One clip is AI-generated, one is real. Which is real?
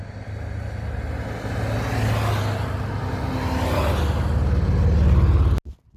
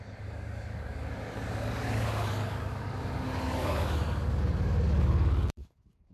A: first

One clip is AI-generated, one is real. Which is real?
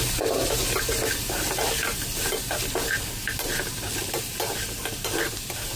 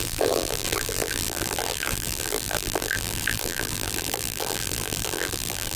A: first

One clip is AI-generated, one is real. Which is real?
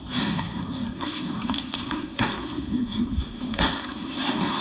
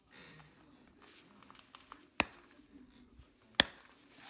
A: second